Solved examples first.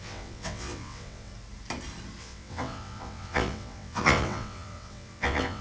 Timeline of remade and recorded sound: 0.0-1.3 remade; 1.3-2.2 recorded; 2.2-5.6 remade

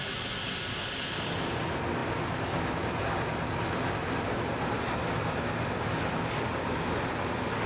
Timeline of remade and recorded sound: 0.0-7.7 recorded

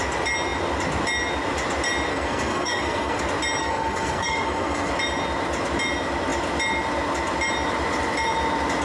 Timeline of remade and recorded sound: 0.0-2.1 recorded; 2.1-3.2 remade; 3.2-3.6 recorded; 3.6-4.9 remade; 4.9-8.8 recorded